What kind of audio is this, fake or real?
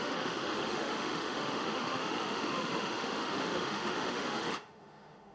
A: fake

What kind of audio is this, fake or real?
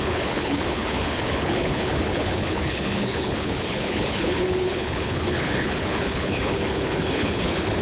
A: fake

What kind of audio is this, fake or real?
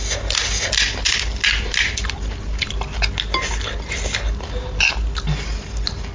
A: real